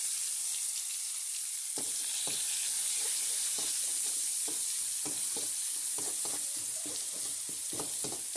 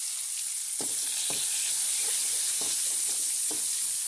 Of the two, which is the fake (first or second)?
first